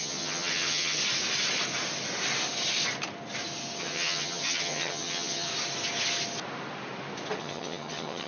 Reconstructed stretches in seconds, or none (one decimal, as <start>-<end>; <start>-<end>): 0.0-1.0; 3.8-5.5; 7.4-8.3

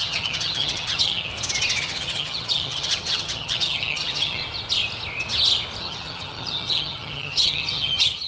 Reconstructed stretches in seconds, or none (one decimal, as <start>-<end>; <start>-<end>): 0.0-1.3; 1.8-4.4; 5.8-8.3

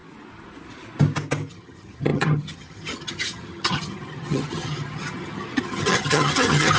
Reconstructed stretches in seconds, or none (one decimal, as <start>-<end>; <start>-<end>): 1.5-6.8

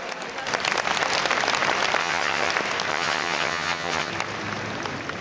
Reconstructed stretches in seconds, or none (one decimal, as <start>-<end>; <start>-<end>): 2.0-2.5; 2.9-4.1

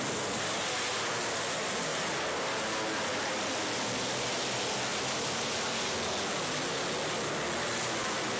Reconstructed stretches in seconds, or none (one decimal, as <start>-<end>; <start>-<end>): none

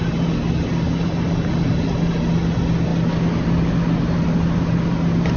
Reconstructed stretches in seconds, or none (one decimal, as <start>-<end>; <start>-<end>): none